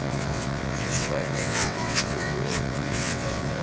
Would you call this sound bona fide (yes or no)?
no